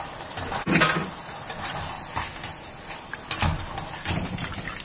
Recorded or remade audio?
recorded